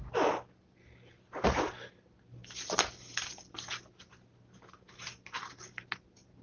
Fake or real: real